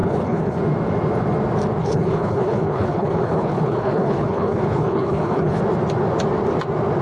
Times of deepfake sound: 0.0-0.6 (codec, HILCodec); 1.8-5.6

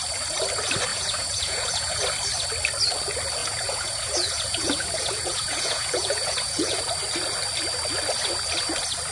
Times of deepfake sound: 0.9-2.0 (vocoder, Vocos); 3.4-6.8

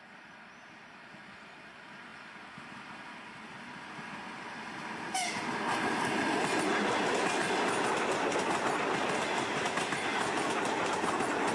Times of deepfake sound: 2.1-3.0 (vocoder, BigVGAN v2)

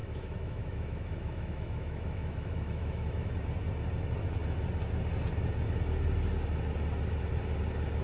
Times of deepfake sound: 0.0-3.3 (autoencoder, DAC-VAE)

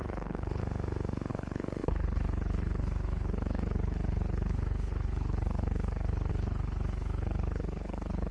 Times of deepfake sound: 0.0-0.6 (codec, HILCodec); 1.3-8.3

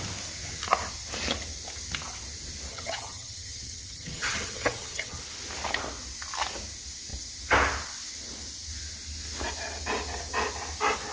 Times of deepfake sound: 2.7-5.2 (vocoder, HiFi-GAN)

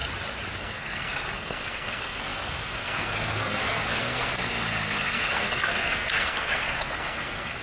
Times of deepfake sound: 0.6-7.6 (codec, SNAC)